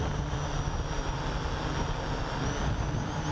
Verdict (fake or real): real